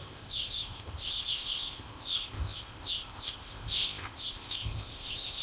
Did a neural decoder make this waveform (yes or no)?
yes